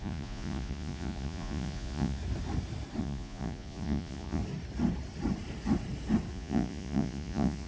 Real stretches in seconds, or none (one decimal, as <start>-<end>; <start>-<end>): 2.2-3.0; 4.4-6.3